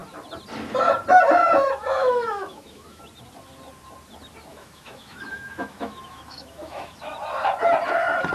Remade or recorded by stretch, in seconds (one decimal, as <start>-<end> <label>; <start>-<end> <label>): 0.0-1.4 recorded; 1.4-3.0 remade; 3.0-4.5 recorded; 4.5-7.1 remade; 7.1-8.3 recorded